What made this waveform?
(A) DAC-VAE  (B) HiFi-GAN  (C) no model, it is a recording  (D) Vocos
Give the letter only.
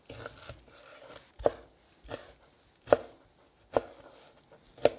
C